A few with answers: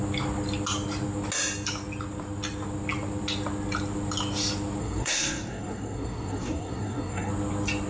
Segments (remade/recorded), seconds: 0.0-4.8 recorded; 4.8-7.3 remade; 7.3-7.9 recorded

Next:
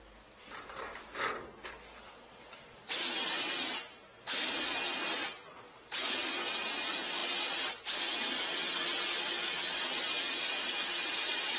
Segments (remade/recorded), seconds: 0.0-11.6 recorded